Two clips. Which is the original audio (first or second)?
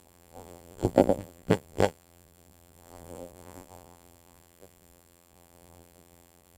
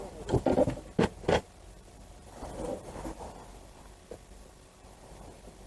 second